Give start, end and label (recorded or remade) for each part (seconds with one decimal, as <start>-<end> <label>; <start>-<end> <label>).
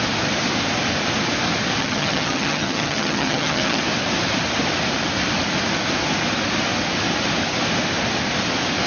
0.0-1.8 recorded; 1.8-3.8 remade; 3.8-8.9 recorded